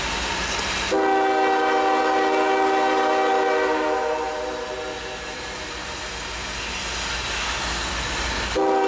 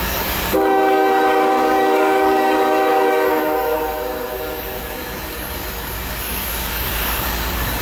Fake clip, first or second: second